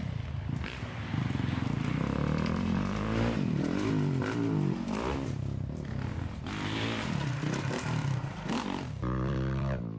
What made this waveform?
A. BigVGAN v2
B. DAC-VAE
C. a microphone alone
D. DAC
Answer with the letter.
A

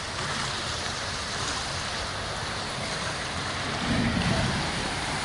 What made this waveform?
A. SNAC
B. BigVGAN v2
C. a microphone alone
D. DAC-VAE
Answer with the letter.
B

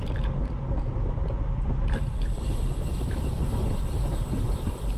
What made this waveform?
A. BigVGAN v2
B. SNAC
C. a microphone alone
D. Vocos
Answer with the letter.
A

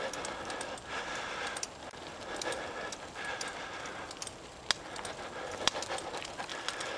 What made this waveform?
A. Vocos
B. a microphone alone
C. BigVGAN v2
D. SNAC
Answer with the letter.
B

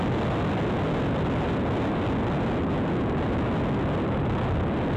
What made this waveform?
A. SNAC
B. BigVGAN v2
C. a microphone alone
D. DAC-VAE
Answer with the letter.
C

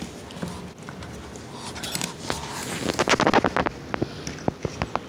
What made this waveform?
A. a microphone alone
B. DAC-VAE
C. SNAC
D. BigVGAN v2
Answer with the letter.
A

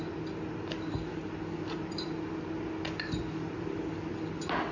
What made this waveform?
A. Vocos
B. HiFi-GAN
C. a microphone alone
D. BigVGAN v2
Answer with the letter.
C